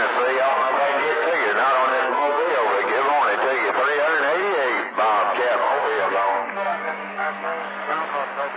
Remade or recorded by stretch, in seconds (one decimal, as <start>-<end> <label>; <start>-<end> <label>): 0.0-0.5 recorded; 0.5-1.3 remade; 1.3-1.9 recorded; 1.9-2.5 remade; 2.5-5.6 recorded; 5.6-8.0 remade; 8.0-8.6 recorded